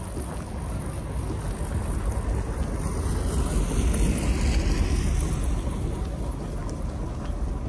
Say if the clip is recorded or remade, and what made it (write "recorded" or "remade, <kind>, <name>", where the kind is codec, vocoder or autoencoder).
recorded